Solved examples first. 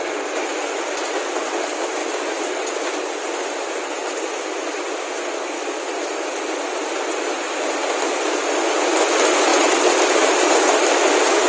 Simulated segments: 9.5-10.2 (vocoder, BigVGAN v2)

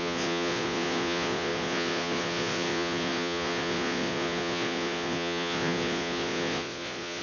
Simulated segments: 0.0-7.2 (vocoder, Vocos)

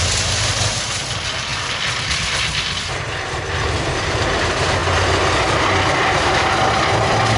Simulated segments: none

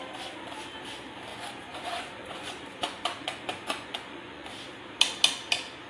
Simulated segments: 1.3-4.5 (vocoder, Vocos)

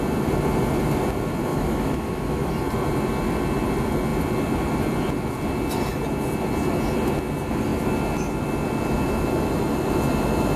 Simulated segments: 1.5-2.5 (autoencoder, DAC-VAE)

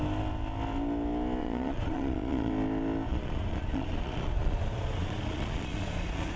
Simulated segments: 1.4-2.5 (vocoder, Vocos); 3.1-6.4

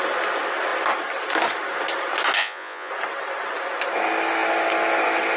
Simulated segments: 2.4-2.9 (vocoder, Vocos)

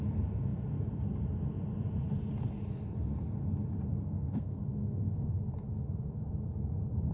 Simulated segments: 3.9-5.3 (codec, SNAC)